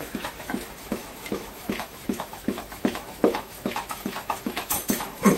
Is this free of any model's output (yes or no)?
no